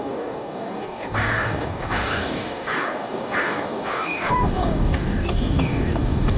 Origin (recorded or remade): remade